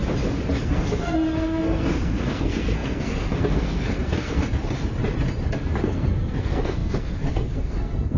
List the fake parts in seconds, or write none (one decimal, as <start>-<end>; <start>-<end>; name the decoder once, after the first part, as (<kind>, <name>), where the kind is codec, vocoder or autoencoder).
0.6-4.4 (codec, SNAC); 5.8-8.2